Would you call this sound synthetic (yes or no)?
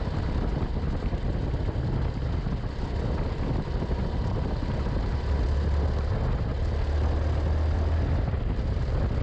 no